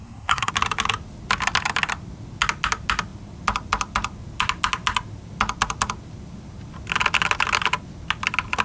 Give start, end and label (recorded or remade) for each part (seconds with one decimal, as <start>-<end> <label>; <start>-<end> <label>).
0.0-0.5 remade; 0.5-8.6 recorded